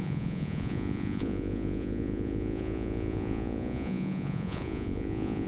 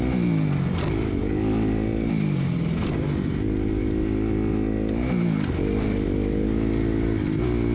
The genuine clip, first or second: second